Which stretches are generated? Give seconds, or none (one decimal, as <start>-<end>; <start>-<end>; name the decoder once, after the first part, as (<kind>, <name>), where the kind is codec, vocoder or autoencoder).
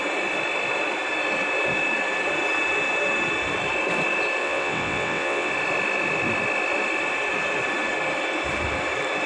4.4-5.5 (vocoder, WaveNeXt)